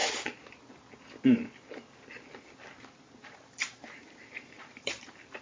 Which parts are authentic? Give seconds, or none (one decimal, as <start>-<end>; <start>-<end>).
0.0-3.2